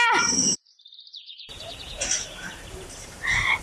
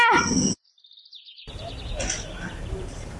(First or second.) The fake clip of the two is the first